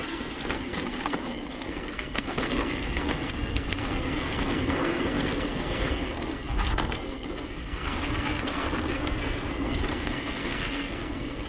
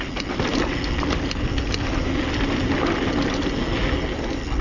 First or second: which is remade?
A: first